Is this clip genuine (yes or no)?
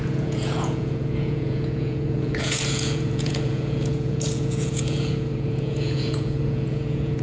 no